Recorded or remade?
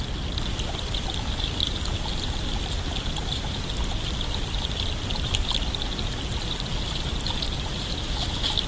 recorded